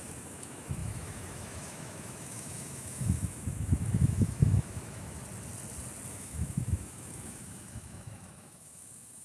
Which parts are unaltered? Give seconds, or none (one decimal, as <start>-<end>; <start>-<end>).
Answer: 5.2-6.1